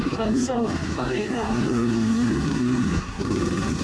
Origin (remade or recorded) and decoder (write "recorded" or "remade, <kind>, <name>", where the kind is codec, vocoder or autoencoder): remade, codec, SNAC